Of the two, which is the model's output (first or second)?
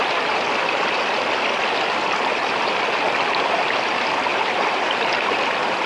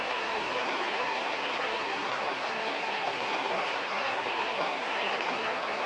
second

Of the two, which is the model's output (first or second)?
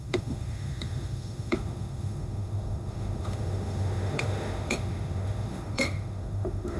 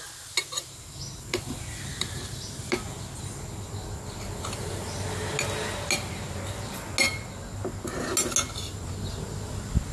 first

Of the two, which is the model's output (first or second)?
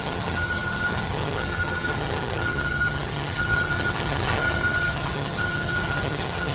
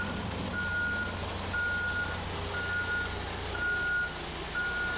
first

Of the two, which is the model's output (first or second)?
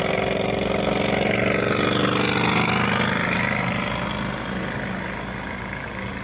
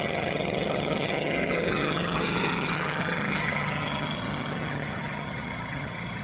second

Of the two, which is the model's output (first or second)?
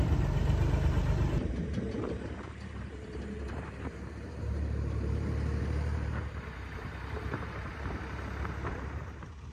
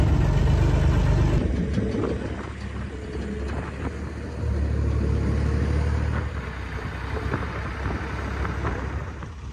first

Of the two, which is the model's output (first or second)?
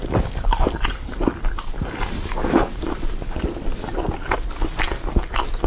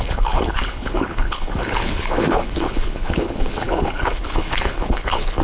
second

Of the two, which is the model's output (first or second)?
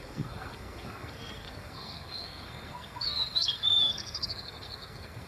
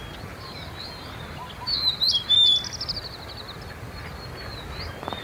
first